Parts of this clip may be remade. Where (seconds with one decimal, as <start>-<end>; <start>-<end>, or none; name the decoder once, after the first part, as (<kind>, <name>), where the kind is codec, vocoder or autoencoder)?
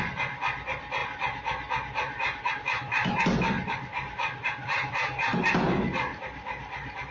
3.9-5.4 (vocoder, BigVGAN v2); 6.1-7.1